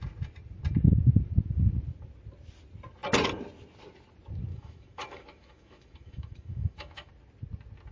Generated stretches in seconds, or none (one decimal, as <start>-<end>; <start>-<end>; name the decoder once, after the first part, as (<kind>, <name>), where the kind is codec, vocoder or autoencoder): 4.5-7.1 (autoencoder, DAC-VAE)